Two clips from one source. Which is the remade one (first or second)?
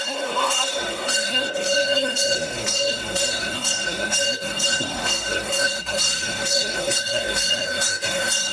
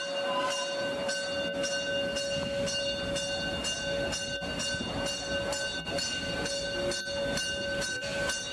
first